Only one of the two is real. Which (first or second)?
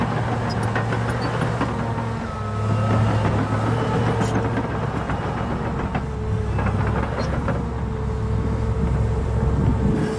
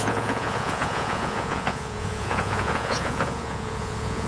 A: first